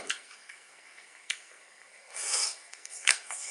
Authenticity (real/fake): fake